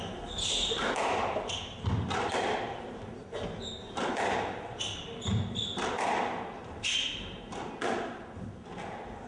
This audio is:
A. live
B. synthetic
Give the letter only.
A